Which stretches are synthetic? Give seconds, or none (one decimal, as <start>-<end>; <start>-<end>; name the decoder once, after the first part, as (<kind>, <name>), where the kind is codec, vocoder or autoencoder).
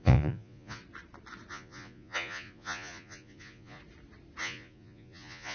0.0-0.8 (vocoder, Vocos); 1.5-3.8; 4.4-5.5